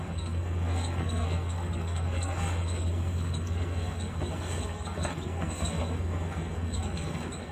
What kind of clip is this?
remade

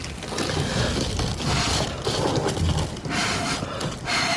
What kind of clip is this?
recorded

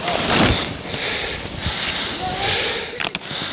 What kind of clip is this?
recorded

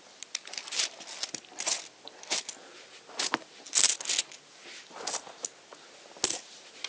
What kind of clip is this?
recorded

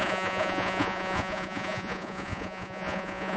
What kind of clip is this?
remade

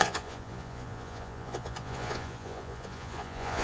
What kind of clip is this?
remade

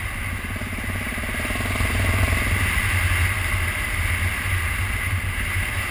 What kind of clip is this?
recorded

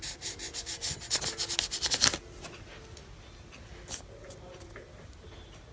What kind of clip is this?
recorded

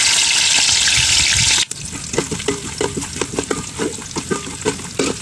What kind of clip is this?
recorded